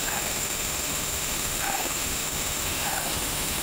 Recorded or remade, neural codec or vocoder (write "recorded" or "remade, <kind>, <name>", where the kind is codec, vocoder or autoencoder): remade, autoencoder, DAC-VAE